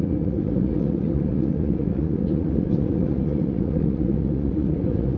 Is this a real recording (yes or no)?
no